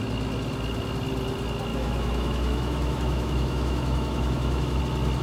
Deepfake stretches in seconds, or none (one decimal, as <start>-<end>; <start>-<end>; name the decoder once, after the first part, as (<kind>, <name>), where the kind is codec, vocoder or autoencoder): 1.7-4.8 (autoencoder, DAC-VAE)

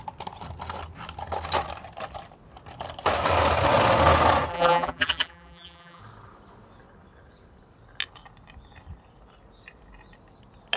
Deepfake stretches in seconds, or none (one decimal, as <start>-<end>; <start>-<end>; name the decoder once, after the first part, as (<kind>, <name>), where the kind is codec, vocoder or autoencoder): 4.5-6.0 (vocoder, BigVGAN v2)

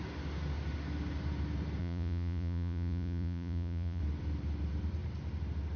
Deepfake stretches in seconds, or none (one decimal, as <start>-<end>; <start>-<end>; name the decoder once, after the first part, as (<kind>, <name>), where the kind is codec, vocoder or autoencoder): 1.8-4.0 (vocoder, Vocos)